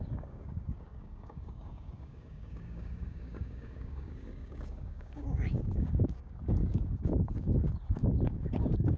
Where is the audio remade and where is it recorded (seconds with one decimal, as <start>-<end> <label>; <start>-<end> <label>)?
0.0-9.0 remade